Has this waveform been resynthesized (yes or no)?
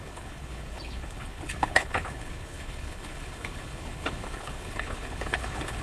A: yes